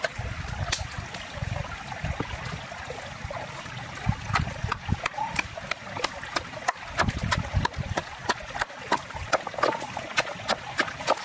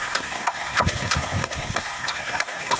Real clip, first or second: first